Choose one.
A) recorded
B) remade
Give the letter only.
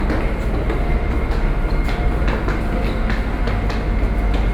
A